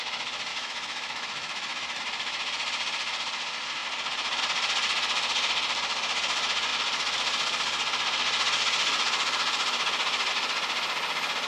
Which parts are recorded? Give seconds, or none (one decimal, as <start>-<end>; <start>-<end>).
0.0-0.5; 2.0-11.5